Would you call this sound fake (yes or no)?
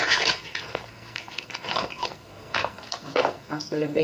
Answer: yes